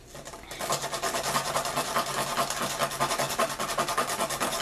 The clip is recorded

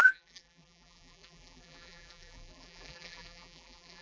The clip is remade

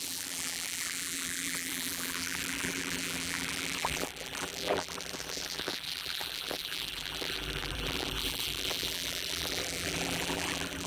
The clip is remade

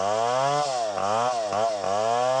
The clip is recorded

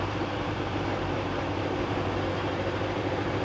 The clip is remade